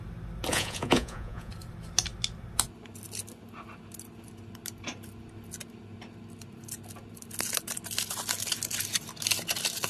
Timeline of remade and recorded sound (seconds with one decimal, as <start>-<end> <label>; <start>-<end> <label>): 0.0-0.5 recorded; 0.5-1.5 remade; 1.5-9.9 recorded